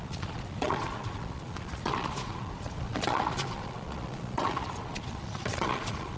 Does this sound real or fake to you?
fake